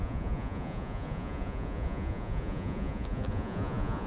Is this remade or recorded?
remade